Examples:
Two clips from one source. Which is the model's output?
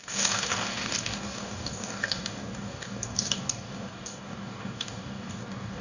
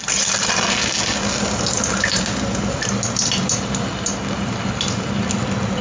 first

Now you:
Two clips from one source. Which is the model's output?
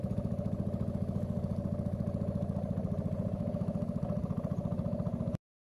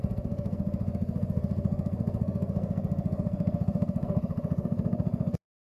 second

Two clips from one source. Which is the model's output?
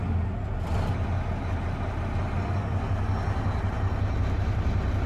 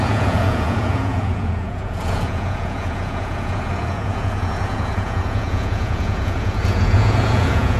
second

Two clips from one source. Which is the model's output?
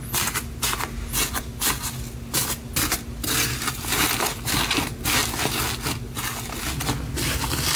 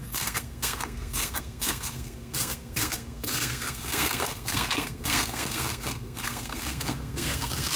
second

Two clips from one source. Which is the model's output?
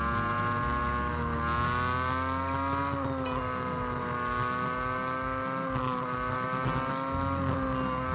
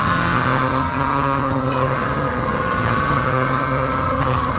second